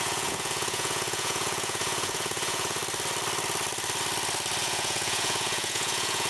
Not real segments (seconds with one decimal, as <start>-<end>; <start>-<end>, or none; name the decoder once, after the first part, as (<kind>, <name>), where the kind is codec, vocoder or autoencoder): 0.0-2.8 (vocoder, Vocos); 4.6-6.3

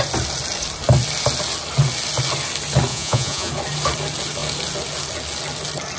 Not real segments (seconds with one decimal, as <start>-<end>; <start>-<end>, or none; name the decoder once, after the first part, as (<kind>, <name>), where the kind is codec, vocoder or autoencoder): 2.9-3.5 (vocoder, Vocos)

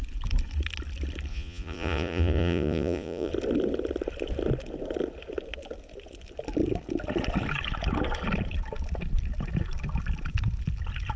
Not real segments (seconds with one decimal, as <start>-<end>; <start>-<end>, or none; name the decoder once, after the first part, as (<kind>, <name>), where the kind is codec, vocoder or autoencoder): 1.3-3.3 (vocoder, Vocos)

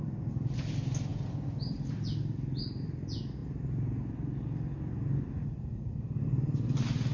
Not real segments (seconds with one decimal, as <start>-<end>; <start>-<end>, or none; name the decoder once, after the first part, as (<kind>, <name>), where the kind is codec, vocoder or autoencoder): none